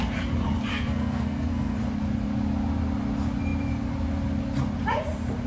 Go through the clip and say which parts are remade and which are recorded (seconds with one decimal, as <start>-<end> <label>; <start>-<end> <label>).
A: 0.0-0.7 recorded; 0.7-1.8 remade; 1.8-5.5 recorded